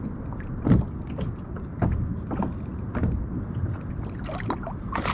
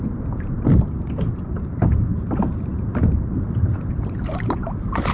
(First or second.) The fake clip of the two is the second